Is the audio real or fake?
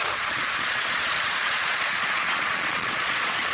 fake